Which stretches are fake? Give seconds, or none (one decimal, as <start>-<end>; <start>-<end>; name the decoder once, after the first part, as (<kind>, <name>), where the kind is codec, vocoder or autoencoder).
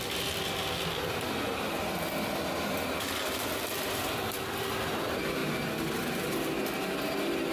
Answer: none